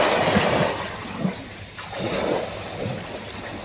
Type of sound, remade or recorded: recorded